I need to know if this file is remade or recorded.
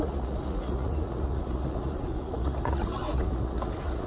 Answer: remade